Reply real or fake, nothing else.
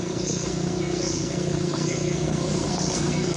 fake